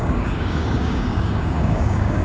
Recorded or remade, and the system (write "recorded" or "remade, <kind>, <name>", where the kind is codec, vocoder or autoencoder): remade, codec, DAC